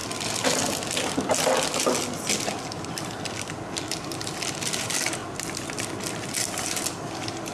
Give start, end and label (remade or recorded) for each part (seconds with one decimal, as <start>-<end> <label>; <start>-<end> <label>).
0.0-7.5 recorded